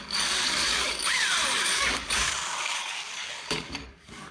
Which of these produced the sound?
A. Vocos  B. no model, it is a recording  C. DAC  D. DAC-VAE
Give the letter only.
C